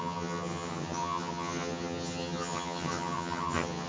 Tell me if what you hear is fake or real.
fake